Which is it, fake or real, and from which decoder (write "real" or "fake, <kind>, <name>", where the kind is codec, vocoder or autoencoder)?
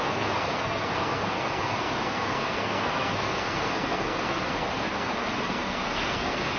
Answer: fake, codec, SNAC